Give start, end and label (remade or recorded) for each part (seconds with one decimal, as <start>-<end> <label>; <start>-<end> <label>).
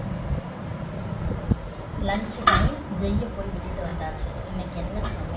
0.0-0.7 recorded; 0.7-2.0 remade; 2.0-5.4 recorded